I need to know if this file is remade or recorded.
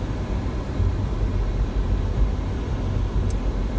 recorded